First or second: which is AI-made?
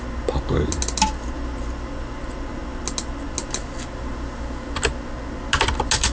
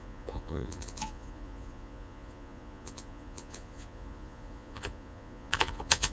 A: second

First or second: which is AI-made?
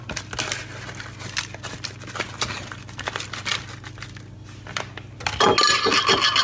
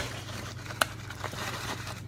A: second